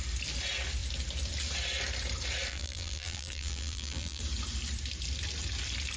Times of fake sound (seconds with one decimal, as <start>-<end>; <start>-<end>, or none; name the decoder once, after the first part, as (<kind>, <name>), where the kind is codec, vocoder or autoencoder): 2.5-4.2 (vocoder, BigVGAN v2)